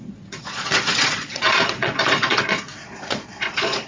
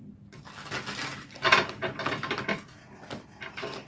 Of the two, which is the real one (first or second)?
second